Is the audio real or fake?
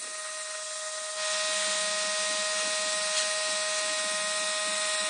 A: real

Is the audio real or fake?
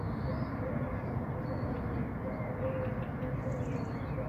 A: real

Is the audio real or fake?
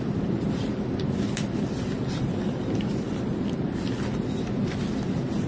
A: real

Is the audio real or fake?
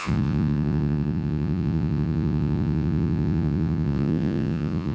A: fake